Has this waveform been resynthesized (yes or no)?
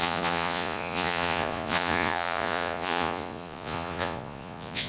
yes